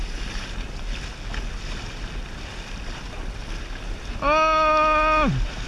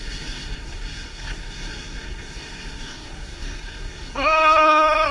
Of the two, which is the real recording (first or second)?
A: first